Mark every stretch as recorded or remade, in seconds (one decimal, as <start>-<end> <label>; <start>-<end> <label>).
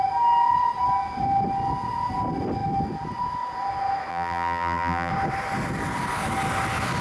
0.0-4.1 recorded; 4.1-5.1 remade; 5.1-7.0 recorded